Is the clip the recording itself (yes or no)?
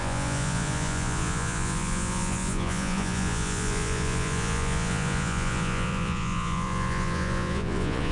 no